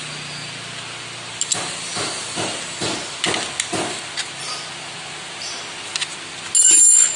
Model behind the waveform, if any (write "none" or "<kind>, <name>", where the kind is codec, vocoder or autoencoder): none